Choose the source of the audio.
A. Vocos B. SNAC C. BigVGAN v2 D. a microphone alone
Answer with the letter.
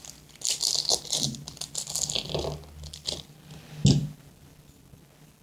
D